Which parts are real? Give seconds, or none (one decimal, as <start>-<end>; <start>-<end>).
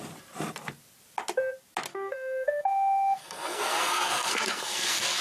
0.0-1.9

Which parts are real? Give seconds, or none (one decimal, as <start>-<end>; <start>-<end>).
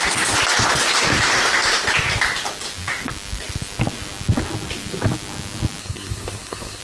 0.0-5.8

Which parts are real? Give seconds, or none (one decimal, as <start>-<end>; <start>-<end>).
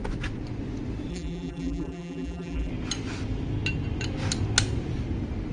0.0-1.1; 2.7-5.5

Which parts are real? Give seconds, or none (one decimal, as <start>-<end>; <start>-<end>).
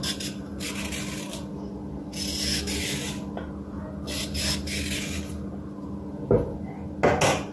0.0-7.5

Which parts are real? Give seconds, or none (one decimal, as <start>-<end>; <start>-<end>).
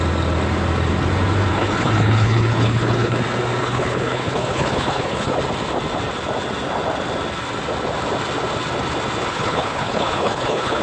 0.0-1.5; 3.2-3.6; 5.4-9.3